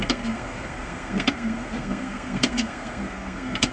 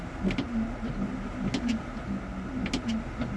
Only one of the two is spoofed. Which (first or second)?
first